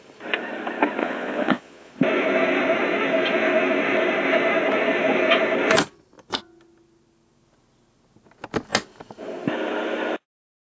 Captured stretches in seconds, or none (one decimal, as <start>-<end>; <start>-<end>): 0.0-1.0; 1.9-10.7